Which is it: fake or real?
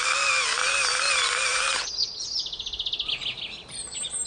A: real